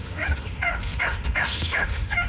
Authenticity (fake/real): fake